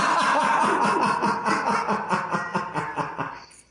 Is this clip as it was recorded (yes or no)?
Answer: yes